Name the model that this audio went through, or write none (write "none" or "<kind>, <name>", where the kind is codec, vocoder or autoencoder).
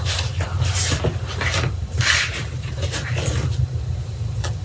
none